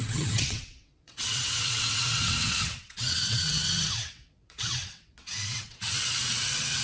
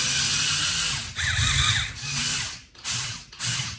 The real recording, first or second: second